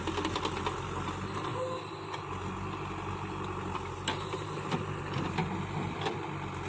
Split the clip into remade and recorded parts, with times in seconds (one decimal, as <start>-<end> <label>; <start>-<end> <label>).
0.0-6.7 recorded